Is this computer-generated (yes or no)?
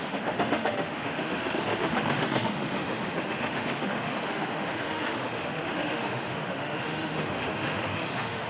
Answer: yes